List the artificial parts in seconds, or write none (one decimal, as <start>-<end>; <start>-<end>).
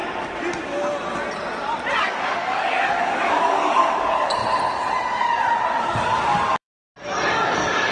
2.0-4.4; 5.8-6.7; 7.3-7.9